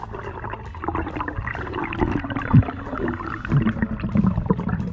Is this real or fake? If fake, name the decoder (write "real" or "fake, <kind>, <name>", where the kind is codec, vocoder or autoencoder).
real